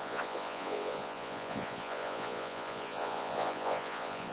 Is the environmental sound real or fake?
fake